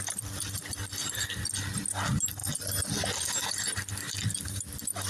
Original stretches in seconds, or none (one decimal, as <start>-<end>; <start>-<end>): 0.0-5.1